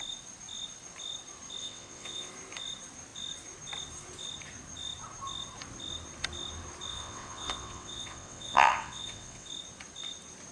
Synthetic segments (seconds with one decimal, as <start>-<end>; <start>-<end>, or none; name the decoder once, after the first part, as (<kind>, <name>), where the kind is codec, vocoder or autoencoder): 1.6-2.3 (vocoder, WaveNeXt); 6.9-9.5